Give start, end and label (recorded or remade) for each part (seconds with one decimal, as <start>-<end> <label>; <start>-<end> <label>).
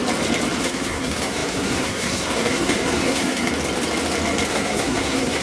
0.0-0.6 recorded; 0.6-3.5 remade; 3.5-4.5 recorded; 4.5-5.4 remade